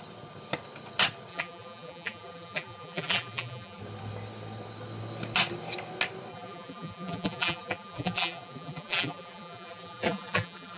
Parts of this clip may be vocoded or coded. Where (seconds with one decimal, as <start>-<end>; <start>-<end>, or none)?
1.3-3.8; 6.3-10.8